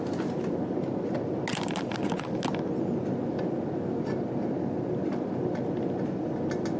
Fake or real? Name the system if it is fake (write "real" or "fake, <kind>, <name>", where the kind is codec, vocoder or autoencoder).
real